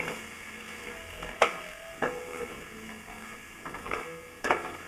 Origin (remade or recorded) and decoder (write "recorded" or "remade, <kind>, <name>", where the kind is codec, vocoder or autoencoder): remade, codec, SNAC